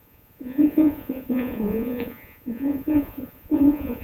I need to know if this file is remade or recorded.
remade